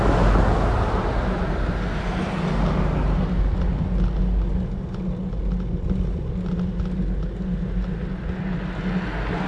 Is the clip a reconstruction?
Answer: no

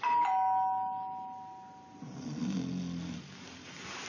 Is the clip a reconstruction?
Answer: no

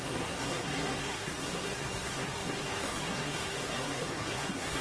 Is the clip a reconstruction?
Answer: yes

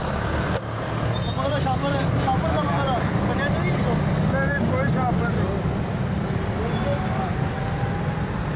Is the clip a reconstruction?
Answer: no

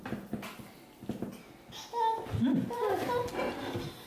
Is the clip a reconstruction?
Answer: no